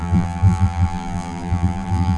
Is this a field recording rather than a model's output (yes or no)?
no